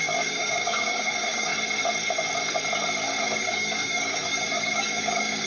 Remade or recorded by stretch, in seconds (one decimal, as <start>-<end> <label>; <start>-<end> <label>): 0.0-1.5 remade; 1.5-3.2 recorded; 3.2-5.5 remade